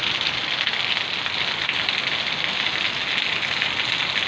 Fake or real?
real